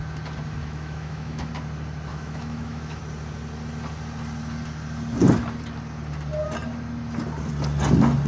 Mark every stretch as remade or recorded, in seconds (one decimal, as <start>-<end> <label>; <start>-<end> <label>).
0.0-0.6 recorded; 0.6-1.5 remade; 1.5-2.1 recorded; 2.1-3.0 remade; 3.0-8.3 recorded